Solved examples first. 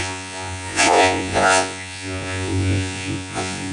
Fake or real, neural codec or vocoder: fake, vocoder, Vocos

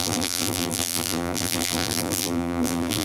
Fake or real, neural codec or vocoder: fake, vocoder, BigVGAN v2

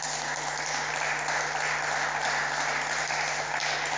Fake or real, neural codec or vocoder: real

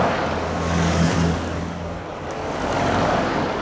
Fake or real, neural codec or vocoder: fake, codec, DAC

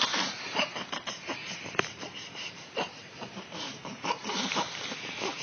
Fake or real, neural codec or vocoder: fake, vocoder, BigVGAN v2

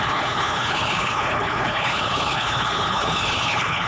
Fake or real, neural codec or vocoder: fake, codec, HILCodec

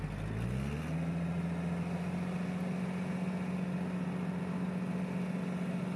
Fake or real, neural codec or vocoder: real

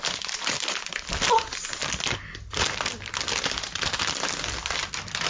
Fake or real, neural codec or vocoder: real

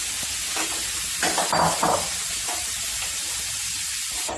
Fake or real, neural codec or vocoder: real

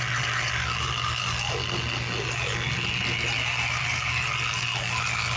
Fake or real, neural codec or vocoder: real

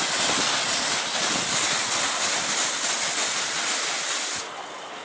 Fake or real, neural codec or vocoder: real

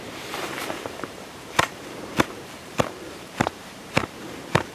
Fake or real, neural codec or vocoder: fake, vocoder, BigVGAN v2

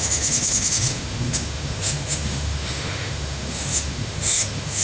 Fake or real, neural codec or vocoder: fake, autoencoder, DAC-VAE